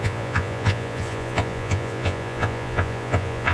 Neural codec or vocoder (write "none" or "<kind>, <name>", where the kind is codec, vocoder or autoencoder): vocoder, Vocos